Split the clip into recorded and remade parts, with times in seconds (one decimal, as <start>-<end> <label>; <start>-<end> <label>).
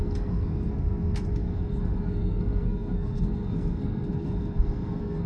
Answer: 0.0-5.3 remade